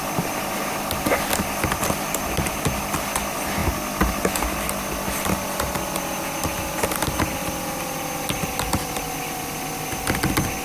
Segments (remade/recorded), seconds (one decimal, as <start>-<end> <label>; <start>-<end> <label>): 0.0-10.6 recorded